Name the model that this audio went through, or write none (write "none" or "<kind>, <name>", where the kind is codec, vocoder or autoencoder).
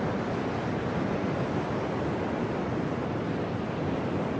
none